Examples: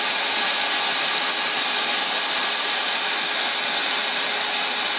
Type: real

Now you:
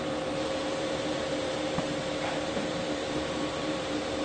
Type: fake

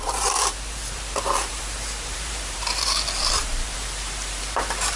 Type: fake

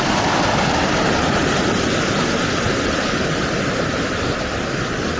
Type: real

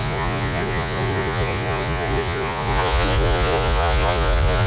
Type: fake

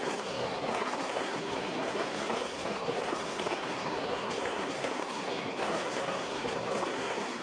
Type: fake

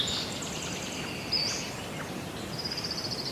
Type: fake